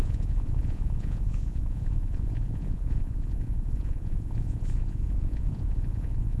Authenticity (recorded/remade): remade